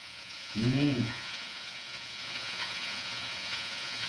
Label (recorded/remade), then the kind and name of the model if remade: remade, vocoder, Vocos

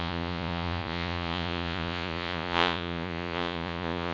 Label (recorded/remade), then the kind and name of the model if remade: remade, vocoder, Vocos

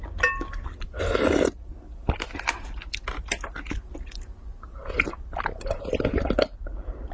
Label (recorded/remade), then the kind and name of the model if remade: recorded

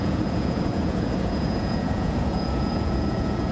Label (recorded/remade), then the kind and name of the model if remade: remade, vocoder, Vocos